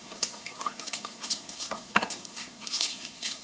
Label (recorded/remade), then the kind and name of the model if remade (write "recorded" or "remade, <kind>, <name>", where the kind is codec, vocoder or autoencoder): remade, codec, SNAC